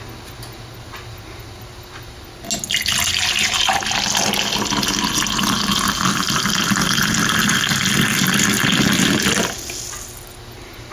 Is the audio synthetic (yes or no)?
no